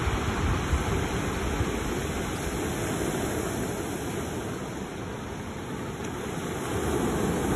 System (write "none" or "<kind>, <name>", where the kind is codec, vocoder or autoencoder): none